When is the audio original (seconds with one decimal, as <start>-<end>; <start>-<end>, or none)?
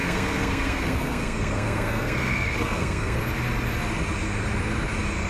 3.2-5.3